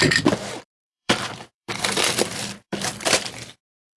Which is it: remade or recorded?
remade